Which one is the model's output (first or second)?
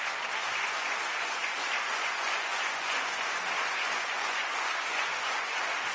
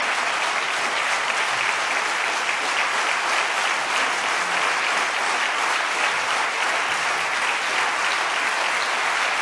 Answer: first